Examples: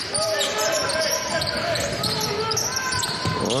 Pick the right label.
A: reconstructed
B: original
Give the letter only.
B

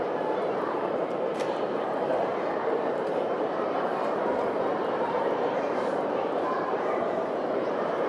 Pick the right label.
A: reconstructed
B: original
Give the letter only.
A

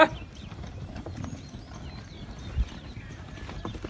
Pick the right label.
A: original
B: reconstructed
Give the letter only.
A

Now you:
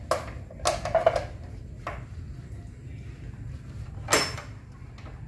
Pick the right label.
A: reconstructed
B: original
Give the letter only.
B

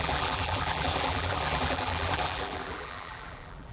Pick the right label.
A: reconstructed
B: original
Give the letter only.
A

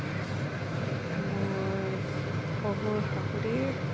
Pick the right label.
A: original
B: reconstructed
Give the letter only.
A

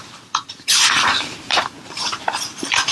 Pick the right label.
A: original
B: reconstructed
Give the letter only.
B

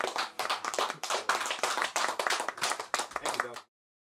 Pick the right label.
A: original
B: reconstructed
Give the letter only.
B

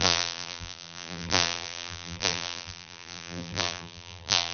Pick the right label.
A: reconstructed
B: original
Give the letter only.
A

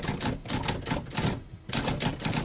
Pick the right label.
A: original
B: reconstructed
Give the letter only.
A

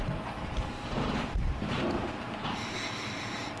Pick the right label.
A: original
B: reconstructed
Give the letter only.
B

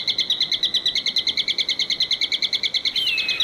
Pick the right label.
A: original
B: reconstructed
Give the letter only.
A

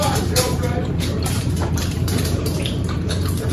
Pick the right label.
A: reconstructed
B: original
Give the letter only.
A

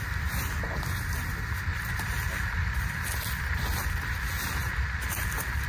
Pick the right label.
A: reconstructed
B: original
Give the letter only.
B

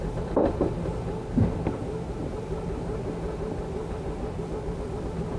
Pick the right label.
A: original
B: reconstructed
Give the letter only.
A